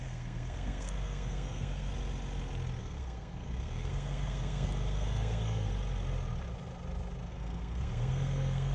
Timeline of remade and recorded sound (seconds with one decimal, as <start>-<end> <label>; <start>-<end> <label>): 0.0-1.9 remade; 1.9-2.8 recorded; 2.8-5.7 remade; 5.7-7.3 recorded; 7.3-8.7 remade